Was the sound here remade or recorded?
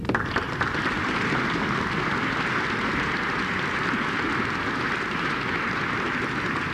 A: recorded